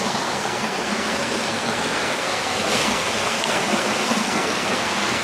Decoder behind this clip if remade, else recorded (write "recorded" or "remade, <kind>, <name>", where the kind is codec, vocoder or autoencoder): remade, codec, SNAC